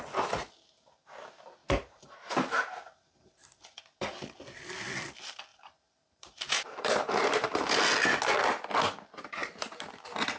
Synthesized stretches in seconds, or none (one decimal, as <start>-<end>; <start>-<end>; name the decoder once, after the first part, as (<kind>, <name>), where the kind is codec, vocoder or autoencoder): 1.6-3.8 (vocoder, BigVGAN v2); 5.5-7.7